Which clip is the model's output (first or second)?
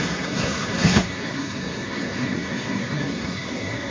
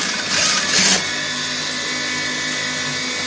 first